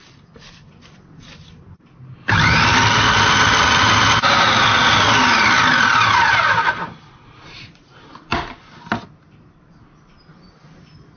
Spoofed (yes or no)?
no